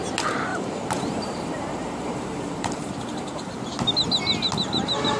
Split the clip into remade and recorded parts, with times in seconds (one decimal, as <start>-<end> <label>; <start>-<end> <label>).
0.0-0.5 recorded; 0.5-3.6 remade; 3.6-5.2 recorded